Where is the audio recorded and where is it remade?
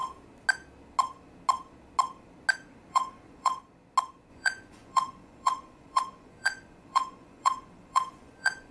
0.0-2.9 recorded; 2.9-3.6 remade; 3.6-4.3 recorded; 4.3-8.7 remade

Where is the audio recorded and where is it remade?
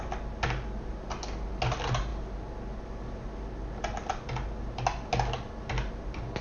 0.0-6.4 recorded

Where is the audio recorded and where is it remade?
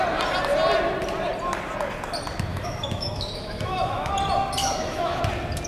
0.0-2.5 recorded; 2.5-4.1 remade; 4.1-4.6 recorded; 4.6-5.2 remade; 5.2-5.7 recorded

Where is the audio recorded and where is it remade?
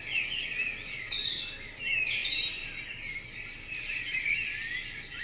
0.0-5.2 recorded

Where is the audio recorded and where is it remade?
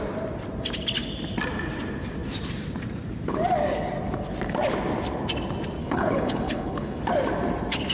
0.0-5.8 recorded; 5.8-7.0 remade; 7.0-7.9 recorded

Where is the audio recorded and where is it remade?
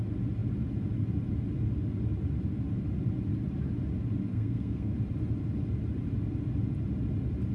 0.0-4.3 recorded; 4.3-4.9 remade; 4.9-7.5 recorded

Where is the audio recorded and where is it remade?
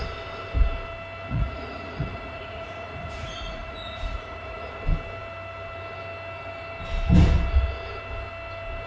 0.0-1.3 recorded; 1.3-4.8 remade; 4.8-8.9 recorded